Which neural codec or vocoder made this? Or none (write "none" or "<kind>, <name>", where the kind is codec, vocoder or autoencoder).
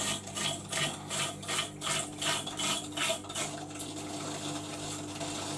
none